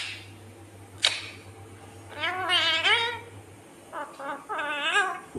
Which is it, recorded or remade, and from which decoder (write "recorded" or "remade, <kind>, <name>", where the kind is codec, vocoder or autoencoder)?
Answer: recorded